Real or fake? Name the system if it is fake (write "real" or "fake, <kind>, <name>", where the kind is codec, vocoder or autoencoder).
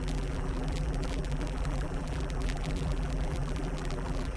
fake, vocoder, BigVGAN v2